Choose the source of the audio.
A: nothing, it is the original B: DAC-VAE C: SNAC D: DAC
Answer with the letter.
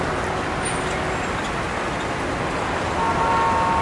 A